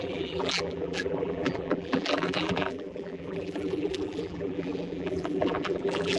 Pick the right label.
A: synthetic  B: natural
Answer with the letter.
A